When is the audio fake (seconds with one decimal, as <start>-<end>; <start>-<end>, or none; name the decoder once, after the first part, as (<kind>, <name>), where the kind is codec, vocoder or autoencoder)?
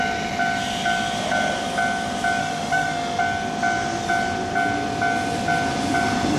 2.4-3.2 (autoencoder, DAC-VAE)